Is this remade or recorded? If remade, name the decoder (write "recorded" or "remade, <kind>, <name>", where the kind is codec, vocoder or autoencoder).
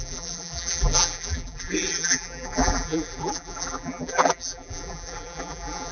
remade, vocoder, BigVGAN v2